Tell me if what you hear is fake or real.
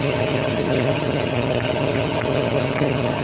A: fake